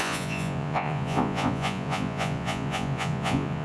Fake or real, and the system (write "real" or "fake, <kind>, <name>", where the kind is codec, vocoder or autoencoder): fake, vocoder, Vocos